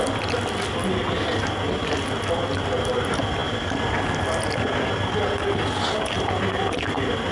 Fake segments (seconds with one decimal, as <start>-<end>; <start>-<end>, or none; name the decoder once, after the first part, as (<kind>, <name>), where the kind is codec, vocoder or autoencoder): none